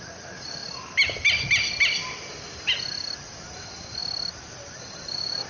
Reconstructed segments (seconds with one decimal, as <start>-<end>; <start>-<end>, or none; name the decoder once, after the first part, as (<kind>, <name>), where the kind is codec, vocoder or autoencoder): 0.0-0.6 (vocoder, BigVGAN v2); 3.5-4.0; 4.8-5.5